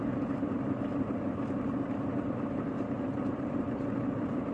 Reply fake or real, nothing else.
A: fake